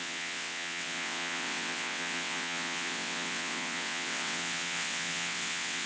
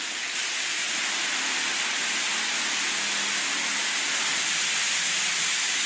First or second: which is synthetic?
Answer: first